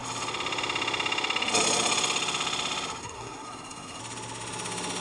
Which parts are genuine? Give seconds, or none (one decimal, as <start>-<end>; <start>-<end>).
0.0-3.0; 4.0-5.0